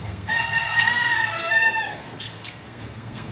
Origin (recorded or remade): remade